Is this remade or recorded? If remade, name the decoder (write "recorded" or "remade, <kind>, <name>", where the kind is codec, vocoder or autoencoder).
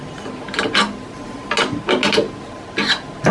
recorded